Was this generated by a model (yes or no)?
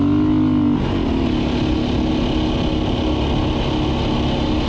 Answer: no